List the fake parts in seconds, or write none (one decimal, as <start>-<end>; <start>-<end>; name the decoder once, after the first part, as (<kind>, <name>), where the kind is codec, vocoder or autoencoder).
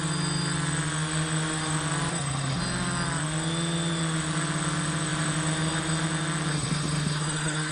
2.1-2.6 (codec, SNAC); 6.5-7.7